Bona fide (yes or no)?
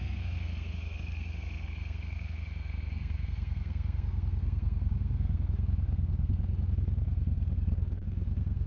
no